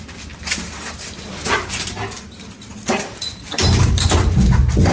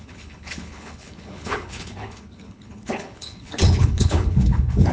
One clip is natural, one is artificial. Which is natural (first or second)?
first